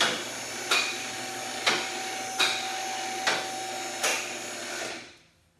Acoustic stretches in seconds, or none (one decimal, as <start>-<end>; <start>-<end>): 0.0-5.6